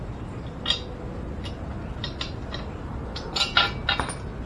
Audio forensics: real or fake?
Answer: real